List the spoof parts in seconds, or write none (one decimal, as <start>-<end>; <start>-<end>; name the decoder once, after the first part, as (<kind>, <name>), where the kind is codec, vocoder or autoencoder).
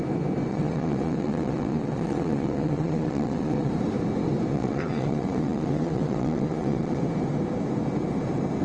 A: 0.5-3.7 (vocoder, WaveNeXt); 4.5-7.0